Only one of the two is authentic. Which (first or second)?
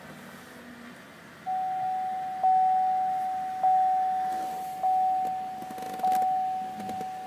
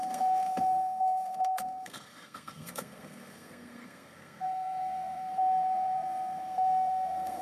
first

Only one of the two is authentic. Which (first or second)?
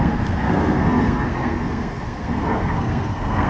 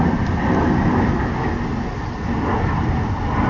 second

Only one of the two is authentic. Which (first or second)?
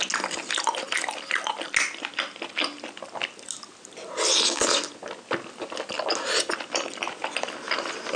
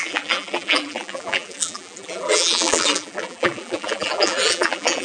first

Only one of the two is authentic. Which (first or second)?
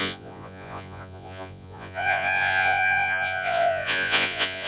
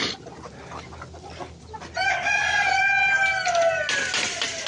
second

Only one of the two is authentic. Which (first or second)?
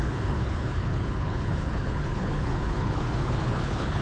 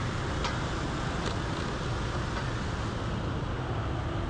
second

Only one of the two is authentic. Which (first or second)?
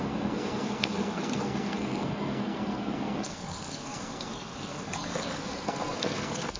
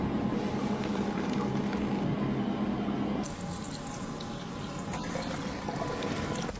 second